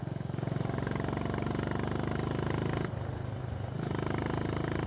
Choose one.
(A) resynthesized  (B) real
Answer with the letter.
B